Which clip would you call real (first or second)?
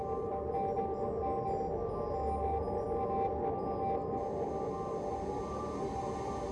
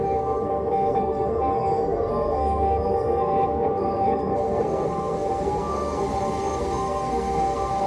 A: first